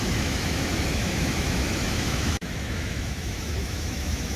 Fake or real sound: fake